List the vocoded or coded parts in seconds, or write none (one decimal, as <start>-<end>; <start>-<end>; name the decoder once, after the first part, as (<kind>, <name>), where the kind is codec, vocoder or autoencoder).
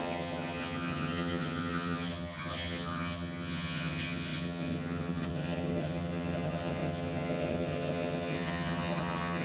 0.0-9.4 (vocoder, HiFi-GAN)